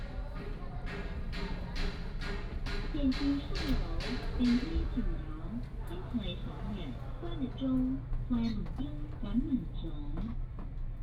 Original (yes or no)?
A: yes